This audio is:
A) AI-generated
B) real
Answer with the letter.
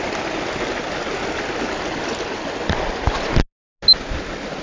B